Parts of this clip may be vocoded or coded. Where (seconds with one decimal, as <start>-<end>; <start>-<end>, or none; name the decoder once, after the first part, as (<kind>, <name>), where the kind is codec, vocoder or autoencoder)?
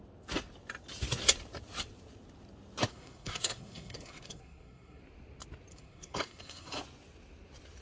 2.9-5.0 (codec, SNAC); 5.7-6.8